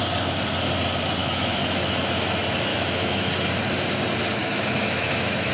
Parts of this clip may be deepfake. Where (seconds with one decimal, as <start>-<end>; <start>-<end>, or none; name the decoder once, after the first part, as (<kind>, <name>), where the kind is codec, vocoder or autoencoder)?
1.2-1.9 (autoencoder, DAC-VAE); 2.7-3.2; 4.4-5.5